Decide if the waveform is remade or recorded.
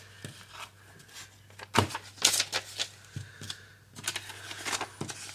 recorded